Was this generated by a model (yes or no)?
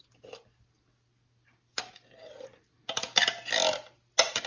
no